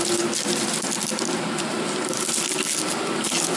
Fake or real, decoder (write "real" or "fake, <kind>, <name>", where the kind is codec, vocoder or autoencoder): real